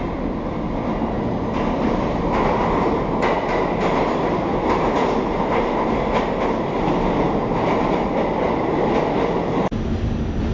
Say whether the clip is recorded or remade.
recorded